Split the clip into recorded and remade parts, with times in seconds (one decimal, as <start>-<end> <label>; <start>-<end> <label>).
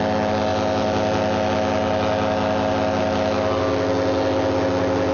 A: 0.0-5.1 recorded